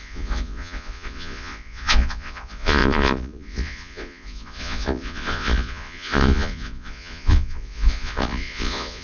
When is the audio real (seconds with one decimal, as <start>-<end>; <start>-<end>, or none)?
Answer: none